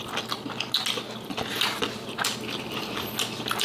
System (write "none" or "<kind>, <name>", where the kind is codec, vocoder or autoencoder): none